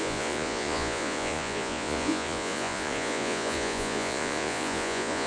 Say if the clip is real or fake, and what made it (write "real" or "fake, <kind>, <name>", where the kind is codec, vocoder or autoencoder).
fake, vocoder, Vocos